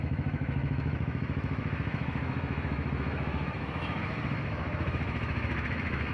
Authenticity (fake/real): fake